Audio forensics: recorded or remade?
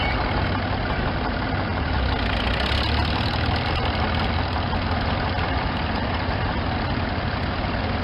recorded